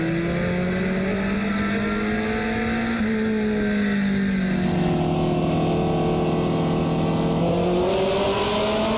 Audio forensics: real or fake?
real